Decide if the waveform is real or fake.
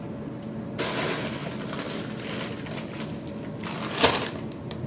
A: real